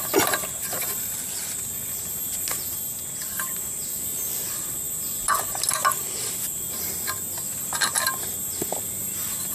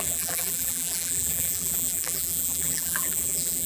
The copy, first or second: second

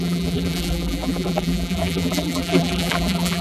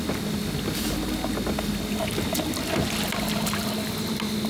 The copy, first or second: first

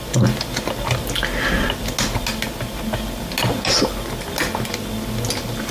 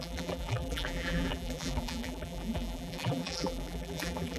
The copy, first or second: second